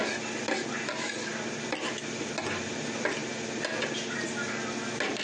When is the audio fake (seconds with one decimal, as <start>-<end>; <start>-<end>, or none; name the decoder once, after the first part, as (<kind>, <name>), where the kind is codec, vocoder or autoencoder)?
none